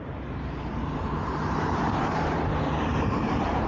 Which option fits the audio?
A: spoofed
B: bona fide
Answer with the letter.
A